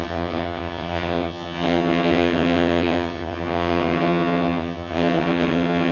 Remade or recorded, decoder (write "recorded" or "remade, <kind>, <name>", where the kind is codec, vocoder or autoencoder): remade, vocoder, HiFi-GAN